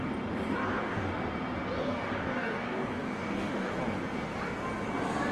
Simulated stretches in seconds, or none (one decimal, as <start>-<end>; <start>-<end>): 0.6-1.1; 1.8-3.7